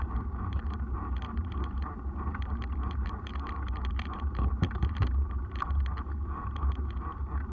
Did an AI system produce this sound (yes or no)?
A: yes